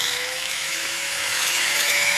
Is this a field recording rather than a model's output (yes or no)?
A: no